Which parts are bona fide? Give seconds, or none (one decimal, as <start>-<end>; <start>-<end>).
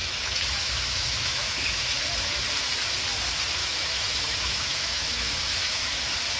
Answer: 2.0-3.6; 6.0-6.4